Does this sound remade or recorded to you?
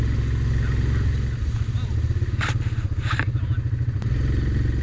recorded